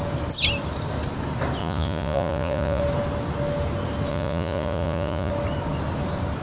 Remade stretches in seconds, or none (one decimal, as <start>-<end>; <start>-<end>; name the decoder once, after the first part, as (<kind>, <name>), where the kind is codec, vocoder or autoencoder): 1.6-2.8 (vocoder, Vocos); 4.1-5.3